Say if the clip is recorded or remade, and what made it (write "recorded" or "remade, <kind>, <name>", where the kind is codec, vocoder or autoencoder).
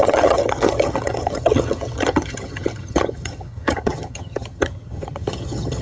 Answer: remade, vocoder, HiFi-GAN